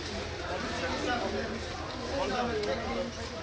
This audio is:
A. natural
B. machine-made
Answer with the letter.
A